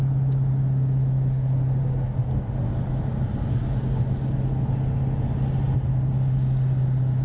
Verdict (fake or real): real